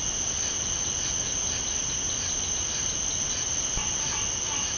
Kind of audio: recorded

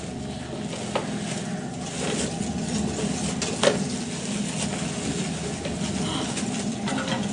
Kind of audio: recorded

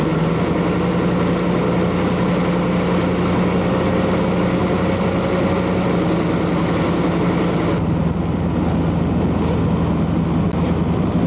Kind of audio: recorded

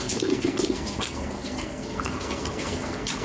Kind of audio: remade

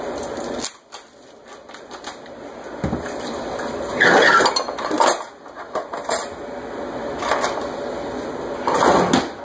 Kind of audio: recorded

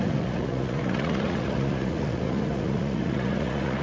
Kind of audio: remade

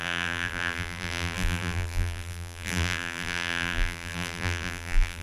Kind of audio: remade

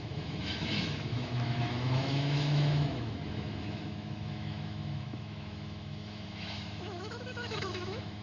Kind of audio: remade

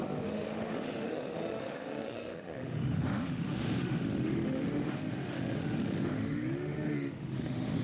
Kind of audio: remade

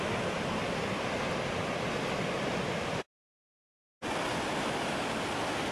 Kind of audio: recorded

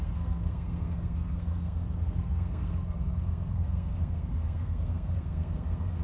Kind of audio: remade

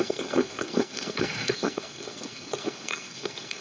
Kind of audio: remade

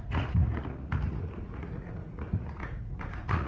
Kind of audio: remade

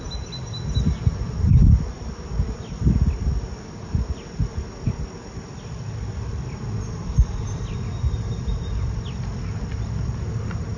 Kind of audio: recorded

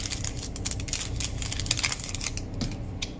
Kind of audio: recorded